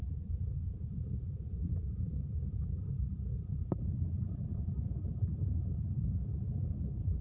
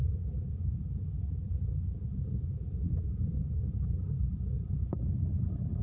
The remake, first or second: first